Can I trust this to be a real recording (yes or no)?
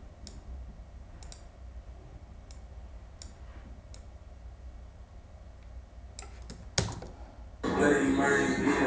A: yes